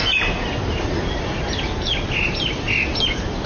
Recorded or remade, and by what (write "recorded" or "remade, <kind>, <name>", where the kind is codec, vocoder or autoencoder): recorded